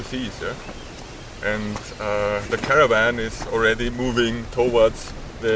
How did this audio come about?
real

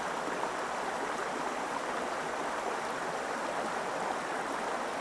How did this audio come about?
real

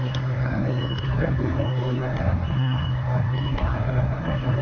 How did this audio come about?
fake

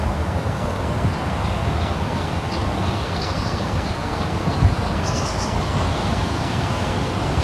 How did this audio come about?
fake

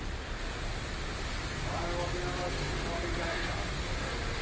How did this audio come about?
real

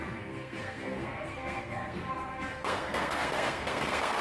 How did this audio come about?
fake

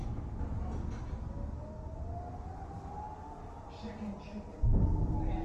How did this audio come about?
real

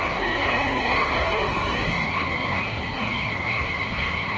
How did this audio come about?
fake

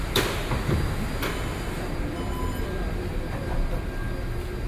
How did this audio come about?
real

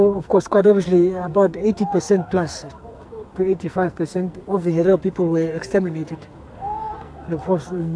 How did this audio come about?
fake